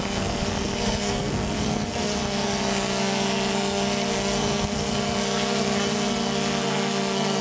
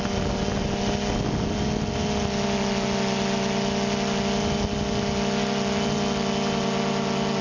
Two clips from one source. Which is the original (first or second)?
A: second